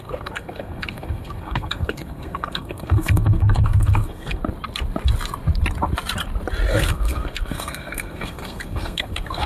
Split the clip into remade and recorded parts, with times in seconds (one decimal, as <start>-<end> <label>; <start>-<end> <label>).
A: 0.0-4.4 remade; 4.4-6.7 recorded; 6.7-9.5 remade